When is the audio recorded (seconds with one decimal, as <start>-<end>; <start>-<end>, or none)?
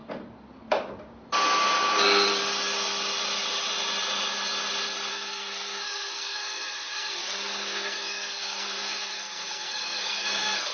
0.0-5.1